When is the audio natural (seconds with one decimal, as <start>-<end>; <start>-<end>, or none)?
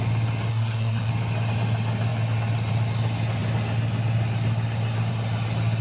0.0-0.5; 1.1-5.8